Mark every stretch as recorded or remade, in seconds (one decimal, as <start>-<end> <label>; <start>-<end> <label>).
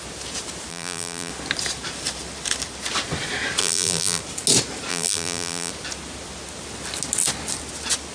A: 0.0-0.7 recorded; 0.7-1.3 remade; 1.3-3.6 recorded; 3.6-4.2 remade; 4.2-4.9 recorded; 4.9-5.7 remade; 5.7-8.1 recorded